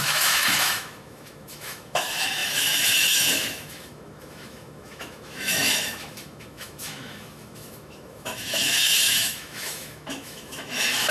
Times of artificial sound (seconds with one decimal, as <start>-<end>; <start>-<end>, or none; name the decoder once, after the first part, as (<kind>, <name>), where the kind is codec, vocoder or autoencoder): 0.0-11.1 (autoencoder, DAC-VAE)